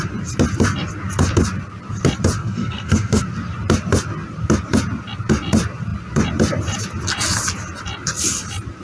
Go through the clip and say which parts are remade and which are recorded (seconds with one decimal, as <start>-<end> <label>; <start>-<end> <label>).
0.0-2.4 recorded; 2.4-3.2 remade; 3.2-8.8 recorded